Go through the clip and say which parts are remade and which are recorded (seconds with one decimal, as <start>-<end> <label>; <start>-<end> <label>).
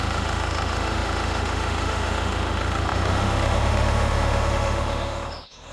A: 0.0-5.7 remade